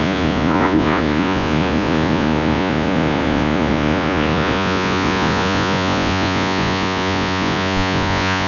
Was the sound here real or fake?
fake